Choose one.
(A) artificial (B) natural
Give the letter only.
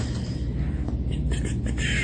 B